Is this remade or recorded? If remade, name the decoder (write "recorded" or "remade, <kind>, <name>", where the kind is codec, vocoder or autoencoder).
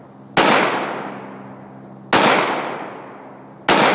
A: recorded